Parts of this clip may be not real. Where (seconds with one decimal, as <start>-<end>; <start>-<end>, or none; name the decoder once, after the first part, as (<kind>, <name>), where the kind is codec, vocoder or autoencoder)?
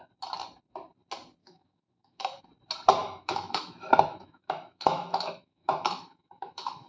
1.4-2.4 (autoencoder, DAC-VAE); 3.0-6.9